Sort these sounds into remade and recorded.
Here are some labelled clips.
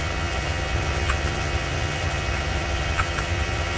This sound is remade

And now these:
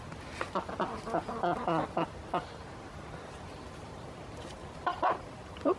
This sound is recorded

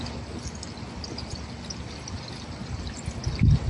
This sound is recorded